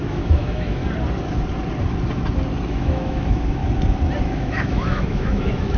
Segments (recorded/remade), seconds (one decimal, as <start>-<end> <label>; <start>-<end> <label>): 0.0-0.8 remade; 0.8-2.7 recorded; 2.7-3.6 remade; 3.6-4.2 recorded; 4.2-5.8 remade